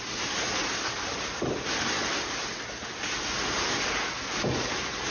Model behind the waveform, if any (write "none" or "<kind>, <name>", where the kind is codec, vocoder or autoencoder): none